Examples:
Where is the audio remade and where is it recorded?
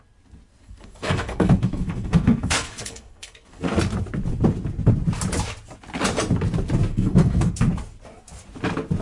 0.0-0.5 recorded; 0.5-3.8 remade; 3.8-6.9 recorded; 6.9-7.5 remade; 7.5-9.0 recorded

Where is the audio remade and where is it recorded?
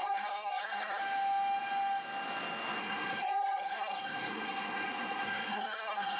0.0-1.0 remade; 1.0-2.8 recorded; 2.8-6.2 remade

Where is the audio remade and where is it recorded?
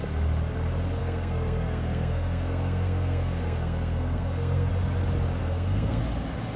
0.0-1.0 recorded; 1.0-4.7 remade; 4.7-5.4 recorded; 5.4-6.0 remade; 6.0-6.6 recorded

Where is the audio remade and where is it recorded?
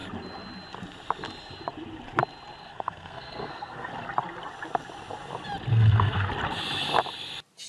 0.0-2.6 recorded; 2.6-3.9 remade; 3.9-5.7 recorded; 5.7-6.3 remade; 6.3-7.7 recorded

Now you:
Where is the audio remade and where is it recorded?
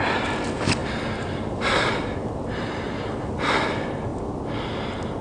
0.0-5.2 recorded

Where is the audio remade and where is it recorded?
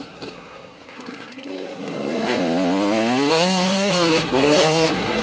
0.0-2.4 remade; 2.4-3.3 recorded; 3.3-5.2 remade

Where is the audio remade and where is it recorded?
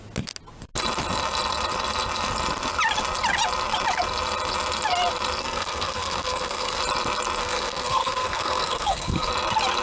0.0-5.4 recorded; 5.4-6.8 remade; 6.8-7.4 recorded; 7.4-9.3 remade; 9.3-9.8 recorded